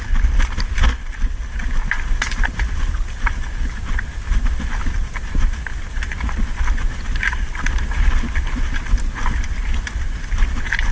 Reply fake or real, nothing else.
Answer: real